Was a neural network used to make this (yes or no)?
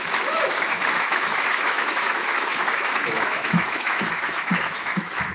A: yes